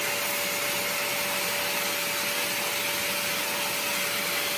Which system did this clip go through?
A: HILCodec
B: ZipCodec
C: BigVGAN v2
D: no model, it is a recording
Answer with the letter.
D